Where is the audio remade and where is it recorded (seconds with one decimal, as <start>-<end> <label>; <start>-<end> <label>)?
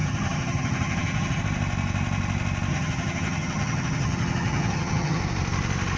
0.0-1.4 remade; 1.4-2.7 recorded; 2.7-5.2 remade; 5.2-6.0 recorded